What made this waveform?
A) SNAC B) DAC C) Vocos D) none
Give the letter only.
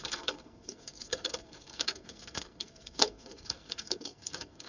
A